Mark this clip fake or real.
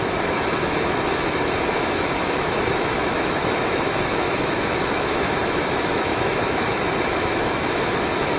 fake